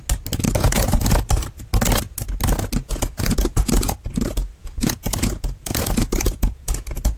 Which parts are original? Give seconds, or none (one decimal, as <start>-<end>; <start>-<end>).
0.0-0.6; 1.3-2.8; 3.7-4.6